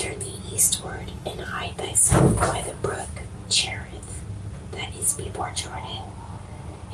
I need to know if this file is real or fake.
real